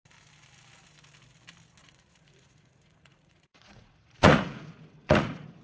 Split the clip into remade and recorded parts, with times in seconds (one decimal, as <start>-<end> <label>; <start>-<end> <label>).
0.0-1.8 recorded; 1.8-5.6 remade